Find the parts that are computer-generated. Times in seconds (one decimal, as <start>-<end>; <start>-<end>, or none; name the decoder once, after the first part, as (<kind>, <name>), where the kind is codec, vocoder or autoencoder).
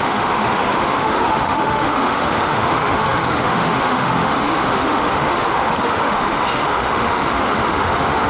0.0-8.3 (autoencoder, DAC-VAE)